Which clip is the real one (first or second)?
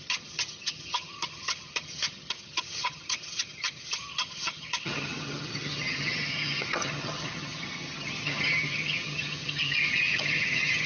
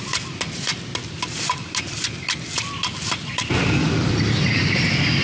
second